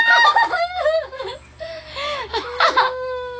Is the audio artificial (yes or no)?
yes